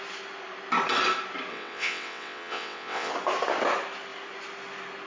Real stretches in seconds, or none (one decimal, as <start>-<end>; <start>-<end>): 0.0-1.5; 3.1-5.1